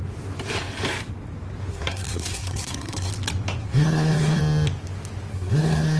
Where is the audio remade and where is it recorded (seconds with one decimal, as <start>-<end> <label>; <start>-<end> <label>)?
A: 0.0-1.7 recorded; 1.7-3.1 remade; 3.1-3.6 recorded; 3.6-4.4 remade; 4.4-5.3 recorded; 5.3-6.0 remade